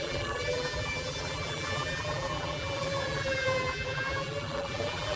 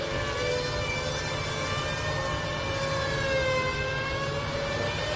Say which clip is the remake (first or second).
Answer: first